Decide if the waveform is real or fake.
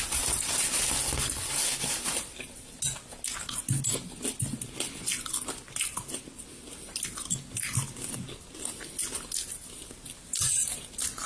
real